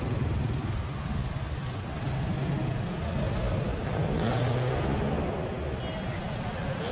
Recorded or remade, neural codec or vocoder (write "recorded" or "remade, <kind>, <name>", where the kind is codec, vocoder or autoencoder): recorded